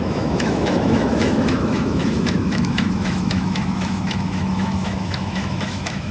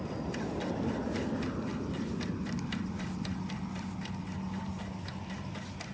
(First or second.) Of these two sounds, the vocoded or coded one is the first